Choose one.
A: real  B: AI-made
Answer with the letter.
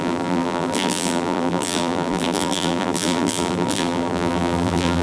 B